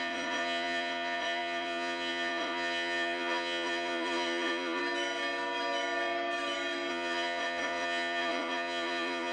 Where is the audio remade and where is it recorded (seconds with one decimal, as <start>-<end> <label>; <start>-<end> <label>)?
0.0-4.8 remade; 4.8-6.9 recorded; 6.9-9.3 remade